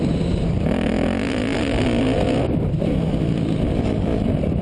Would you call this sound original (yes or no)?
yes